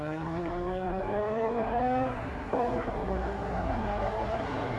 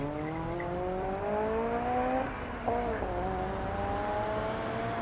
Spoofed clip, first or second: first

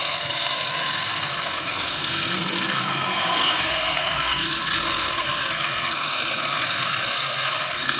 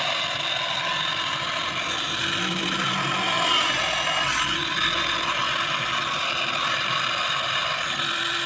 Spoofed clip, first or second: first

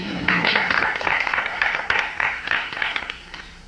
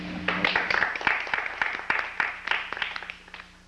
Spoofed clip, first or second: first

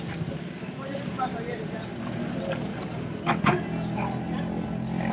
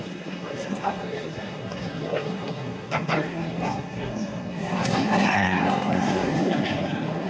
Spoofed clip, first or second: second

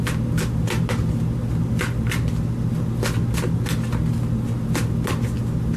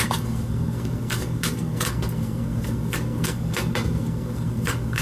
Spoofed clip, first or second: second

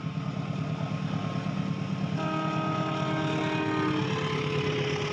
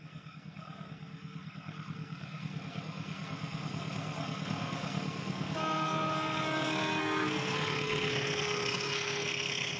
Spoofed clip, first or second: second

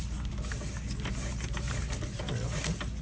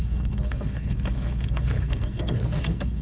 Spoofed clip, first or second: second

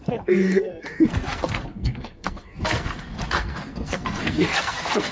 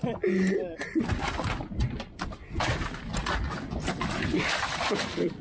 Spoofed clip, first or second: first